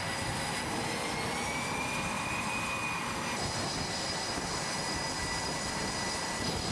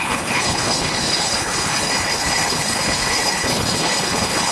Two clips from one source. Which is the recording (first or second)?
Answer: first